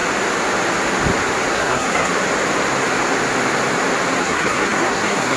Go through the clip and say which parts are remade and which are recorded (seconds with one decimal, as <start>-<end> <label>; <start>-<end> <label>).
0.0-1.5 recorded; 1.5-2.1 remade; 2.1-4.2 recorded; 4.2-5.4 remade